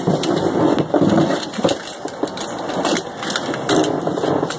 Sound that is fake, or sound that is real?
real